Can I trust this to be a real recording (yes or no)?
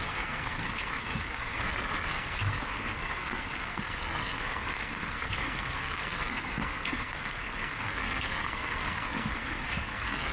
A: no